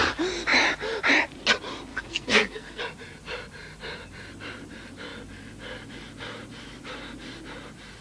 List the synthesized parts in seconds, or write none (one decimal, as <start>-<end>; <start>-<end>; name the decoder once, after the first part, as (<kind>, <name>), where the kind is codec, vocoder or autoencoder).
1.9-2.8 (codec, SNAC)